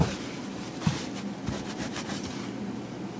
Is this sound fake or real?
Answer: fake